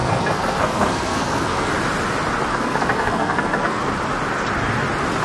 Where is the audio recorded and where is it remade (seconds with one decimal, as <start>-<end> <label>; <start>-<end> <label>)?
0.0-1.7 remade; 1.7-2.5 recorded; 2.5-3.8 remade; 3.8-5.2 recorded